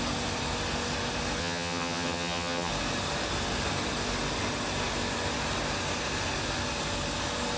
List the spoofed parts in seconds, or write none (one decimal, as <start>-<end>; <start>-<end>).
1.4-2.7